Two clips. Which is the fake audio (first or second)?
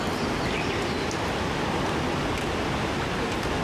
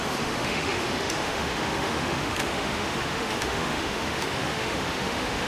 second